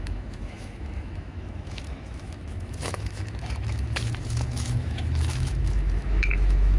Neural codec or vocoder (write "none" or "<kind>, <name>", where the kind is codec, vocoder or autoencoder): autoencoder, DAC-VAE